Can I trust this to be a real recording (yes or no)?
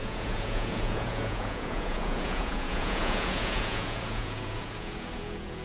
no